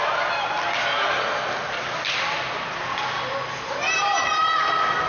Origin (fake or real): real